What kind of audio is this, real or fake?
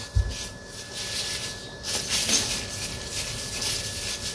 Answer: real